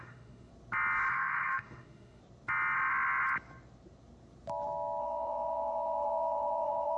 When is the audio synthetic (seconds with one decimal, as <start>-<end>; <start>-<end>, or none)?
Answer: 0.0-0.5; 1.1-2.2; 5.0-7.0